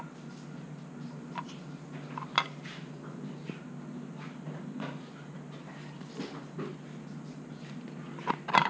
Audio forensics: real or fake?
real